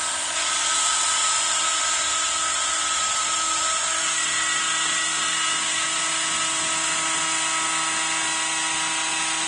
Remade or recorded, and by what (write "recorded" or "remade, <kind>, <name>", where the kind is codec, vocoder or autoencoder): recorded